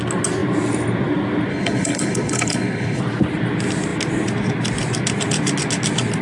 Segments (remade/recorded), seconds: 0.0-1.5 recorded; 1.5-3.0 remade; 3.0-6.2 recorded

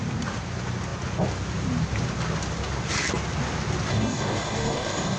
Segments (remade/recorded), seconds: 0.0-3.9 recorded; 3.9-5.2 remade